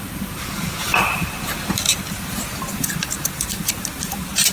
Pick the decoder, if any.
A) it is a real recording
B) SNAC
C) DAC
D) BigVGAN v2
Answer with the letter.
D